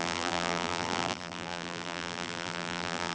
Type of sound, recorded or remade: remade